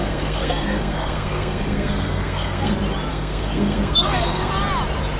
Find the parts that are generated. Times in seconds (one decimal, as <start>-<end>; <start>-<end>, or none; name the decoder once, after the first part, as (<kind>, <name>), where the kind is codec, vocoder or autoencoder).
0.0-2.7 (codec, SNAC); 3.1-4.5